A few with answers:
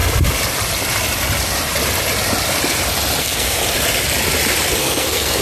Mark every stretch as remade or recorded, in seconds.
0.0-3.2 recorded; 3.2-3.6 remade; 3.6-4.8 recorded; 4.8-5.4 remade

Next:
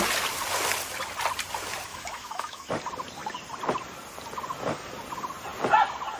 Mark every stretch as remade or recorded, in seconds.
0.0-1.9 recorded; 1.9-2.7 remade; 2.7-6.2 recorded